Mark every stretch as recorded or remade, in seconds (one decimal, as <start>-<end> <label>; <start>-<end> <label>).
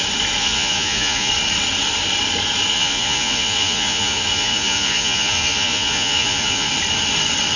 0.0-0.4 recorded; 0.4-1.3 remade; 1.3-2.7 recorded; 2.7-6.7 remade; 6.7-7.6 recorded